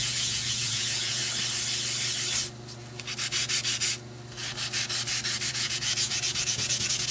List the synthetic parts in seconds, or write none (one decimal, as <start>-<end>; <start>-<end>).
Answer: 0.0-1.2; 5.5-7.1